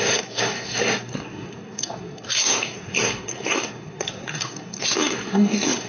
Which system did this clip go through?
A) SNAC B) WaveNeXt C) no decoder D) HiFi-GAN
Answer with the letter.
A